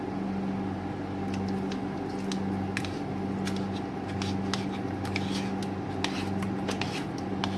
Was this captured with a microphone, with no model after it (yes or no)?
yes